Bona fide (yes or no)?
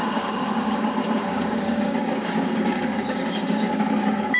no